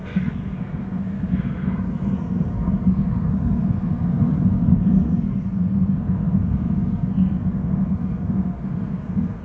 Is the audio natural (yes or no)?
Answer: no